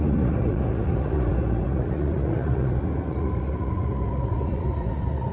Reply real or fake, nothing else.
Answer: fake